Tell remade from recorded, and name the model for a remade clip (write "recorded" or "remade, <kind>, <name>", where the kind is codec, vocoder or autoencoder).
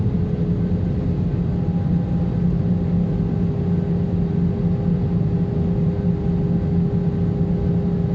recorded